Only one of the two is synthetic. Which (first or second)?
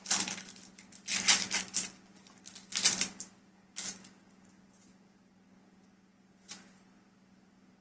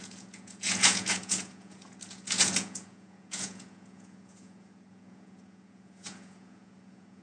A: second